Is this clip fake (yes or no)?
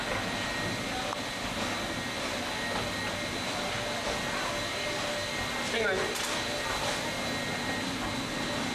no